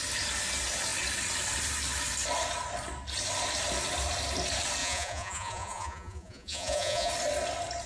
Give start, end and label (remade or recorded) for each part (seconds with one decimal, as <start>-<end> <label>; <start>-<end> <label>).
0.0-4.8 recorded; 4.8-7.1 remade; 7.1-7.9 recorded